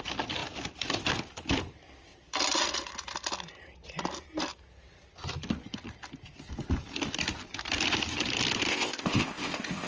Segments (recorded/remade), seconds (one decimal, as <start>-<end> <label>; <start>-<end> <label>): 0.0-8.7 recorded; 8.7-9.9 remade